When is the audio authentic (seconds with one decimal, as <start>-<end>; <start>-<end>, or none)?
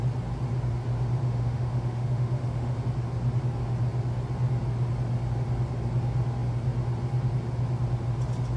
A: 0.0-1.2; 2.8-8.6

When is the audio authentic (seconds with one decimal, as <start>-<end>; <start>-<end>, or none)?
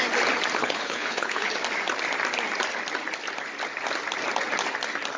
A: 0.0-0.6; 1.5-5.2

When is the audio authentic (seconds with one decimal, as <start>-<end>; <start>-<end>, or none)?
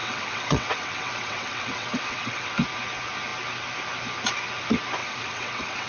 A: 2.5-5.0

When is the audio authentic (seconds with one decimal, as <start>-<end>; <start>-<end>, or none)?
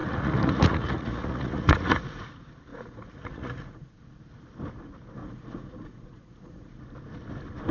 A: 2.2-2.7; 3.9-5.2; 6.8-7.7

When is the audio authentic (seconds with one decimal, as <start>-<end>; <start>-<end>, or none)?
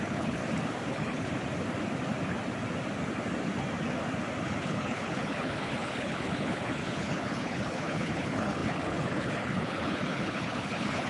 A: 0.4-0.9; 1.3-4.4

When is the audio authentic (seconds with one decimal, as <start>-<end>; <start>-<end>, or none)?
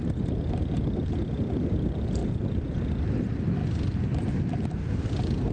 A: 0.0-5.5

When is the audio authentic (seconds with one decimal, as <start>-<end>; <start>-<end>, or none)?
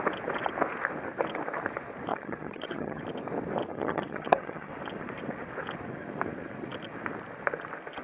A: 0.0-2.1; 3.0-3.7; 4.7-8.0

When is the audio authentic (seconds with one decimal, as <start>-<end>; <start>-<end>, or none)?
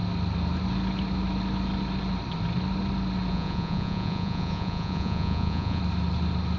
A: 0.0-3.3; 5.8-6.6